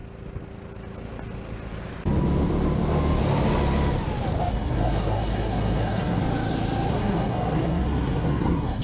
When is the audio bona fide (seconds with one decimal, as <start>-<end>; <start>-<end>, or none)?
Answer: 0.0-4.5; 6.2-6.9